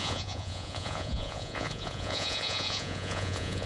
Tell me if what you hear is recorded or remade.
remade